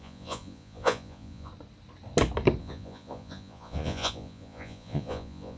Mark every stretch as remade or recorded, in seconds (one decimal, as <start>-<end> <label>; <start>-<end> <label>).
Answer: 0.0-1.5 remade; 1.5-2.6 recorded; 2.6-5.6 remade